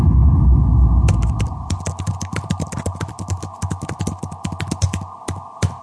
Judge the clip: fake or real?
real